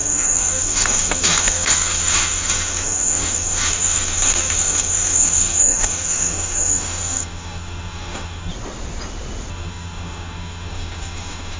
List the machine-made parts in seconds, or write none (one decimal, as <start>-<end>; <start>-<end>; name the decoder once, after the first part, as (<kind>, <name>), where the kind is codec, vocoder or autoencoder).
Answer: 0.0-8.5 (codec, DAC); 9.5-11.6